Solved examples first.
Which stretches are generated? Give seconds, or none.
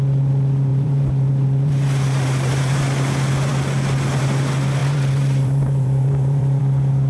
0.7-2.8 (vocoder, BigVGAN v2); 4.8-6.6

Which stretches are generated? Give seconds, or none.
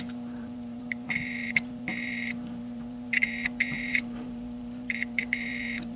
0.0-6.0 (vocoder, BigVGAN v2)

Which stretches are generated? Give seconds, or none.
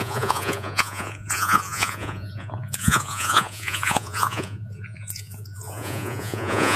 0.0-6.8 (vocoder, Vocos)